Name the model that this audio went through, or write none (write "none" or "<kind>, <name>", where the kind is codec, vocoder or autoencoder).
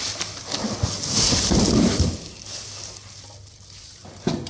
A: none